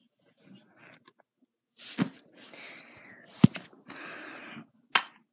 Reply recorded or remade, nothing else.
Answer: recorded